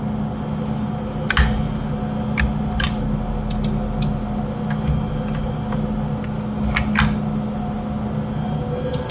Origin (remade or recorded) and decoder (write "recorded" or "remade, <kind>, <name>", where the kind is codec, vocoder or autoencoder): recorded